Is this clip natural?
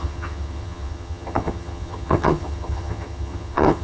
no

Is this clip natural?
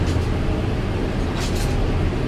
yes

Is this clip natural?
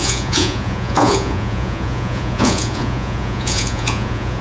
no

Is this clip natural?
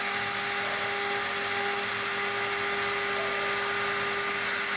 yes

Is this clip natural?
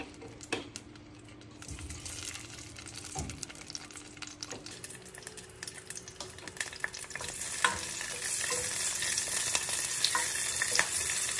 yes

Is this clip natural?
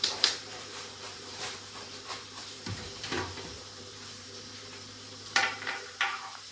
no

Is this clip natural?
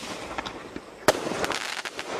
yes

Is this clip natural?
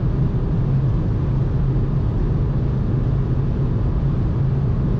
yes